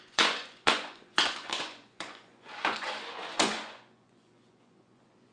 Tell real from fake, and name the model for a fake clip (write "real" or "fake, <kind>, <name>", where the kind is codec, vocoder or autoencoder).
fake, vocoder, Vocos